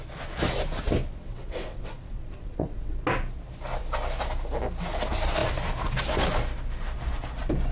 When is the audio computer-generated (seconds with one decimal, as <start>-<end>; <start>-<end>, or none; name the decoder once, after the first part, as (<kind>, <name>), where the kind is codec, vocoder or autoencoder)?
1.3-2.9 (vocoder, WaveNeXt)